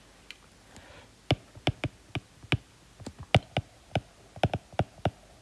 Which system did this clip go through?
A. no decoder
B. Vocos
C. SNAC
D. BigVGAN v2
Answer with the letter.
A